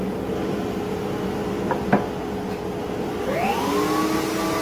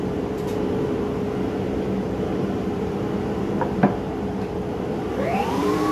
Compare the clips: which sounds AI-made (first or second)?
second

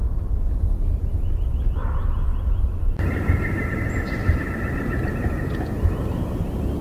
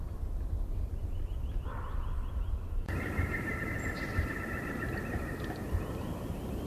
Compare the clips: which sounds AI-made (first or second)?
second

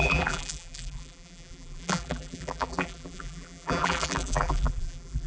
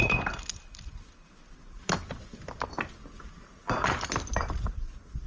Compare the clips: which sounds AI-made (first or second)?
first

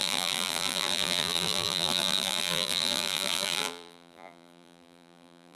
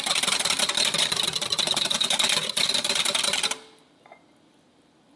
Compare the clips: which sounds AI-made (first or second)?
first